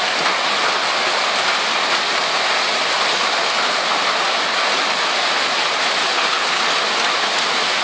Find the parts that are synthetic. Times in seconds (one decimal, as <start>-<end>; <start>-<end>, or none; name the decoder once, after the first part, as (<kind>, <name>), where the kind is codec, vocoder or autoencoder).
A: 6.0-6.6 (codec, HILCodec)